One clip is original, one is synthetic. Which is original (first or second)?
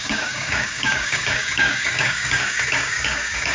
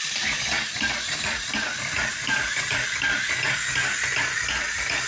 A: second